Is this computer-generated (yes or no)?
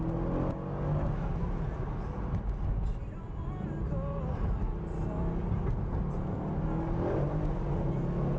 no